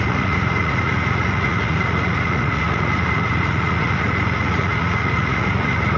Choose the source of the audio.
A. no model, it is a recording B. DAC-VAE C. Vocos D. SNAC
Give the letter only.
C